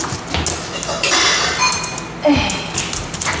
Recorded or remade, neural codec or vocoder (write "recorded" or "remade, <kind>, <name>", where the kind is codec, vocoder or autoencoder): recorded